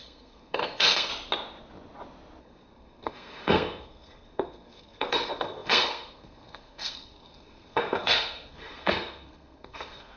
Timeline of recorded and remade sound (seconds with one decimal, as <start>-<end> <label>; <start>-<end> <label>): 0.0-1.1 remade; 1.1-2.4 recorded; 2.4-10.2 remade